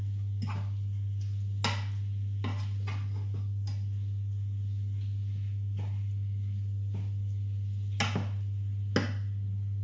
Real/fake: real